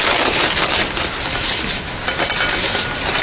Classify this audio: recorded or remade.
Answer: recorded